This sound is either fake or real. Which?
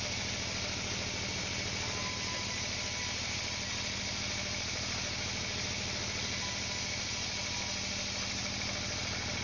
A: real